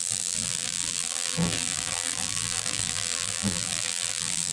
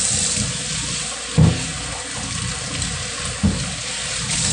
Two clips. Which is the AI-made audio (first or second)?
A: first